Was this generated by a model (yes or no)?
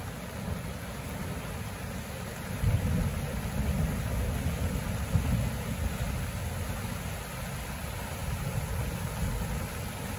no